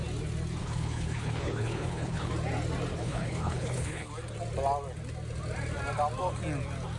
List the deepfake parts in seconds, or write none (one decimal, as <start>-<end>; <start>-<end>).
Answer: 0.6-2.3; 3.0-4.1